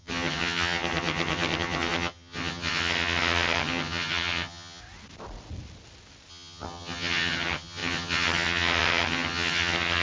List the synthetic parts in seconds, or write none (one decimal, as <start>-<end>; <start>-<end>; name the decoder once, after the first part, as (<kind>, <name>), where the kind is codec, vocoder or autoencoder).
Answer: 0.0-4.8 (vocoder, HiFi-GAN); 6.3-10.0